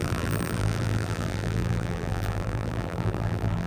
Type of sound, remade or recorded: remade